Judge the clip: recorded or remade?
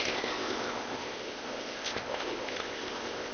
remade